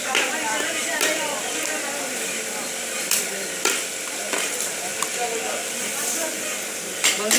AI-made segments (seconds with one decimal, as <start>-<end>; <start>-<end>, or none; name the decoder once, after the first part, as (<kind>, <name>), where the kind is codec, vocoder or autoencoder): 0.0-4.9 (vocoder, BigVGAN v2); 5.9-7.4